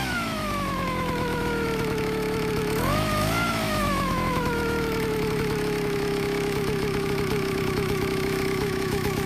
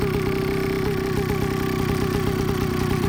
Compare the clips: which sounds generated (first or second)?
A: first